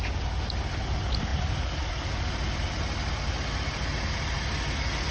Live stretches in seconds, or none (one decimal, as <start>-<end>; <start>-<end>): 0.0-5.1